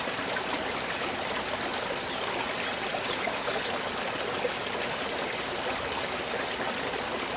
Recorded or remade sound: recorded